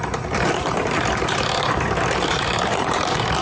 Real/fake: fake